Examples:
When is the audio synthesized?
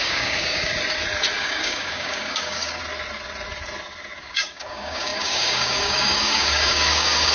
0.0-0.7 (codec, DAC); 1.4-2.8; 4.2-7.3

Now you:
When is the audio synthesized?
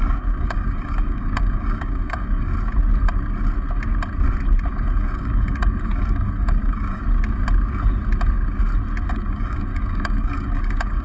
0.0-2.5 (codec, DAC); 4.7-7.0; 9.1-11.0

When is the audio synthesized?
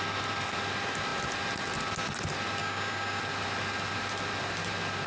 2.6-3.2 (codec, DAC)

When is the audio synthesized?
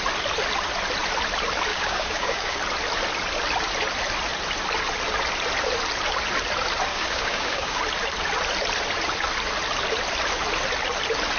1.7-2.6 (codec, DAC); 6.9-7.8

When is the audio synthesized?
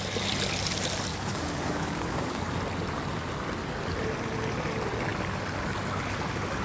1.1-2.6 (codec, DAC)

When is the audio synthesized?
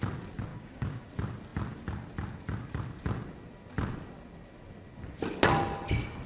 0.5-1.1 (codec, DAC)